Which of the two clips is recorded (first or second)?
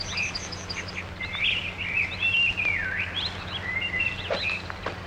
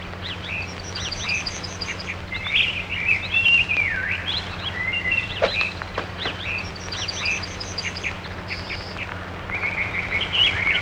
first